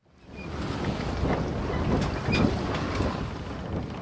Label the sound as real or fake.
real